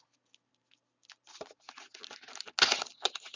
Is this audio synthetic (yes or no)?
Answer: no